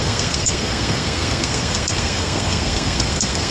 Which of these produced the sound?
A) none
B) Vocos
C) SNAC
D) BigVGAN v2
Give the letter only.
C